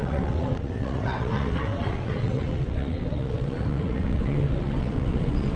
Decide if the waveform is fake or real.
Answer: fake